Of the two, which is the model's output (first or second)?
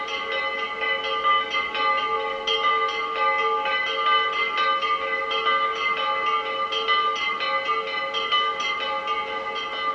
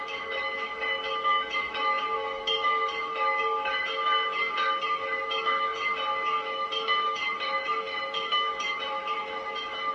second